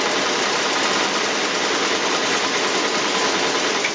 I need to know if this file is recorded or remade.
recorded